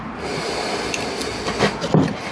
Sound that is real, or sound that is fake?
real